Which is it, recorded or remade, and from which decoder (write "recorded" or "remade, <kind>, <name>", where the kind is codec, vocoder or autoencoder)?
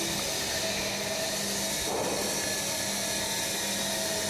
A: recorded